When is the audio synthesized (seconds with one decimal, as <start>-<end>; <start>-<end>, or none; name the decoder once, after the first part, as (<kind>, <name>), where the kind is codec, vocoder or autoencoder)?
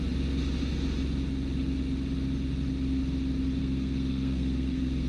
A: 3.6-5.1 (codec, SNAC)